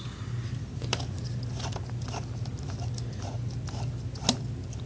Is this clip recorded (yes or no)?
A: yes